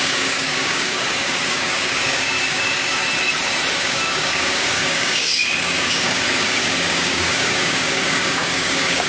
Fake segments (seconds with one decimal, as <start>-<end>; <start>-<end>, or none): 0.0-3.0; 3.7-9.1